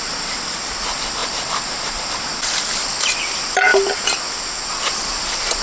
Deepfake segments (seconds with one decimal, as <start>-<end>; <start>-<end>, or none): 1.2-2.2